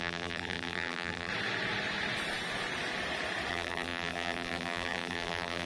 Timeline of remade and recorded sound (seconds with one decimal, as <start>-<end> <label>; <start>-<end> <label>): 0.0-1.3 remade; 1.3-3.5 recorded; 3.5-5.7 remade